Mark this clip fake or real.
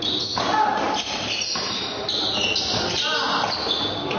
real